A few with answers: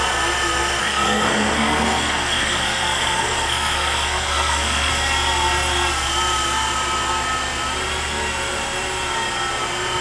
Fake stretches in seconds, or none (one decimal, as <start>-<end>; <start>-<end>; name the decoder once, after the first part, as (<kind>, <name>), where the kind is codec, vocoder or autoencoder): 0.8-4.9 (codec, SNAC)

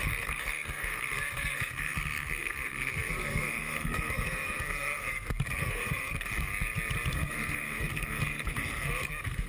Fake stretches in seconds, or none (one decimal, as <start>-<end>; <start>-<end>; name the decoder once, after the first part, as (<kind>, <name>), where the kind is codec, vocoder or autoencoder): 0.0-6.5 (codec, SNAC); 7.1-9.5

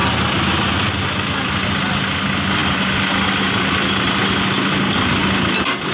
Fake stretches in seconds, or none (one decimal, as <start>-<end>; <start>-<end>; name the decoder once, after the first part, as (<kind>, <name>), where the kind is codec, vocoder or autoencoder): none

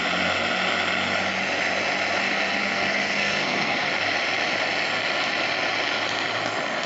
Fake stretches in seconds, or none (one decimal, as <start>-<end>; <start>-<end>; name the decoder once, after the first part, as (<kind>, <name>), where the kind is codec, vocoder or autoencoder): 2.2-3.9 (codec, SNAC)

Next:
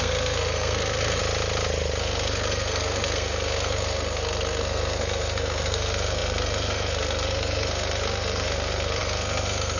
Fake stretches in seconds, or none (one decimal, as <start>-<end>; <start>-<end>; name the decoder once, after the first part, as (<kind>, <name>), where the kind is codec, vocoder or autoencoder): 0.0-1.2 (codec, SNAC); 2.0-9.8

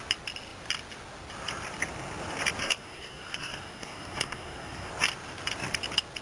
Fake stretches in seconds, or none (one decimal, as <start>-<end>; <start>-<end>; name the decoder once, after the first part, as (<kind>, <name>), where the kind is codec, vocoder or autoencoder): 2.6-4.9 (codec, SNAC)

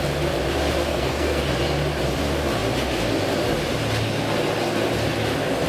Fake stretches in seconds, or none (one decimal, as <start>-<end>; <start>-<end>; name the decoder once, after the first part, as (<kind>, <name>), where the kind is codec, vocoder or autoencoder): 0.9-1.4 (codec, SNAC)